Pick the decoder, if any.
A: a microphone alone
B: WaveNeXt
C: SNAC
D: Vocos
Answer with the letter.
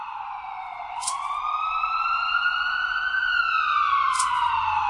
A